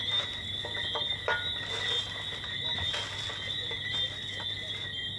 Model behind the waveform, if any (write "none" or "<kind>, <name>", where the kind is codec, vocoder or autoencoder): none